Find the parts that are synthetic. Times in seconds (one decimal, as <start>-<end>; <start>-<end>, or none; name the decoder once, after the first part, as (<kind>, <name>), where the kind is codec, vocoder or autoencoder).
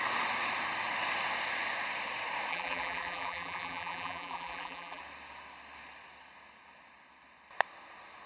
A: 2.5-5.0 (vocoder, BigVGAN v2)